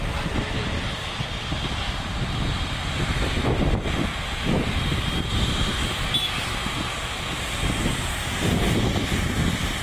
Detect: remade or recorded recorded